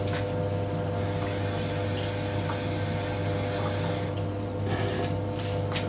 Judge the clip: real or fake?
real